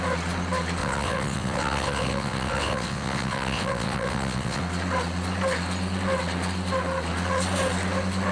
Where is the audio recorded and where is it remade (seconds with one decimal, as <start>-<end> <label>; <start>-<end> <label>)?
0.0-0.8 recorded; 0.8-4.6 remade; 4.6-8.3 recorded